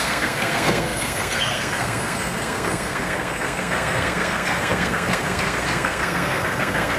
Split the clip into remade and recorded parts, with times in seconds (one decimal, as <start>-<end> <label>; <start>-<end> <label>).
0.0-7.0 remade